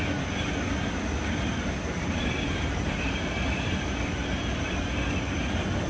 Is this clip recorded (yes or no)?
yes